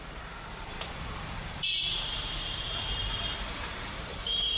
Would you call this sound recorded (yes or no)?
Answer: no